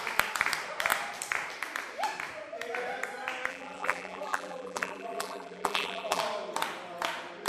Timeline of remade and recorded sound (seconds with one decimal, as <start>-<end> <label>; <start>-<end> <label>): 0.0-3.5 recorded; 3.5-6.2 remade; 6.2-7.5 recorded